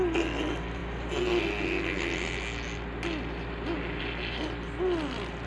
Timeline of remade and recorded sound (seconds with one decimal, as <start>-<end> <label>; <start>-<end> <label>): 0.0-5.5 recorded